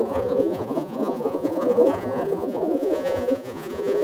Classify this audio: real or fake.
fake